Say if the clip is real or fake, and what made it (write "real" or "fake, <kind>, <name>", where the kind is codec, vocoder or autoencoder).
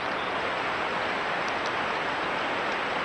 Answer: real